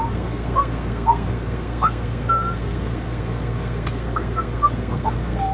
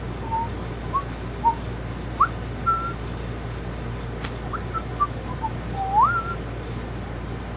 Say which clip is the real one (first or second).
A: second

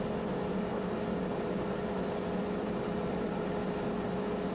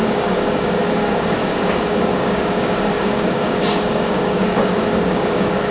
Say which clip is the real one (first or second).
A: first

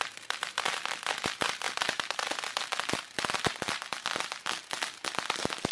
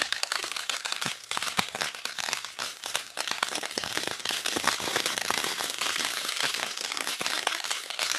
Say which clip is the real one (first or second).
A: first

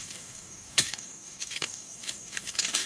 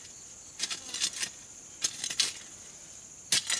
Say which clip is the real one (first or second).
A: second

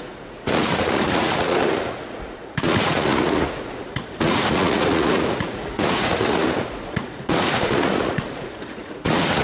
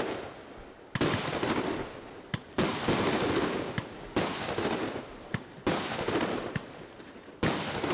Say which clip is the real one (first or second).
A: second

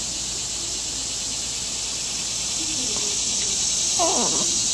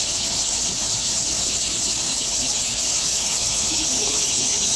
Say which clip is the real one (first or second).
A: first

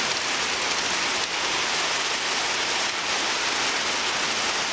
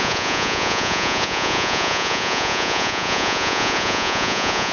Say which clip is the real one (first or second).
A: first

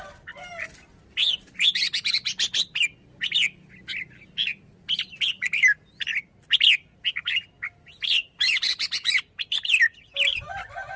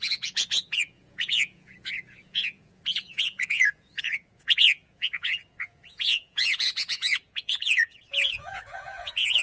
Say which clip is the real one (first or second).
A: first